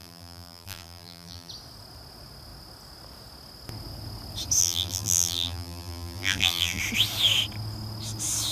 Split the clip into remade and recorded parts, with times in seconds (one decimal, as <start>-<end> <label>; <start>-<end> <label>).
0.0-1.5 remade; 1.5-4.6 recorded; 4.6-6.8 remade; 6.8-8.5 recorded